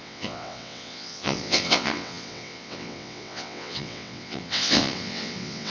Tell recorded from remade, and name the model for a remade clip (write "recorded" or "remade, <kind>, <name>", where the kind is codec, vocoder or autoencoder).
remade, vocoder, WaveNeXt